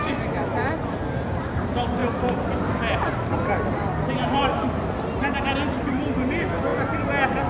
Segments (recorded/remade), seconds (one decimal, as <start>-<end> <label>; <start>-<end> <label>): 0.0-7.5 recorded